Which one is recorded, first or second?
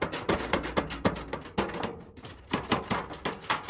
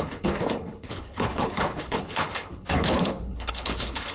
first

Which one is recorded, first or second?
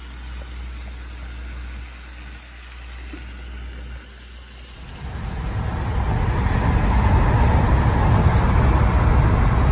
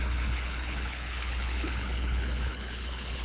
first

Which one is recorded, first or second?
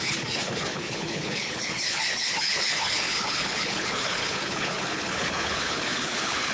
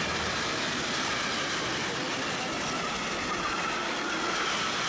second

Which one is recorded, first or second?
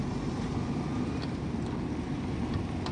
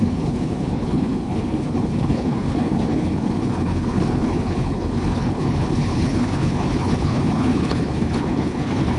first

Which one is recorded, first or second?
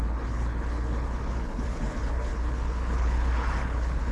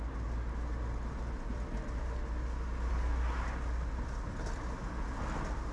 second